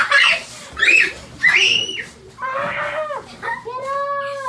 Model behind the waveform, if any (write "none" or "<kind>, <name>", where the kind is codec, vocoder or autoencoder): none